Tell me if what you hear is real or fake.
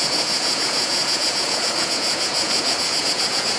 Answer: fake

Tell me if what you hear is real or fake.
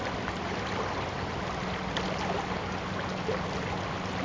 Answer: real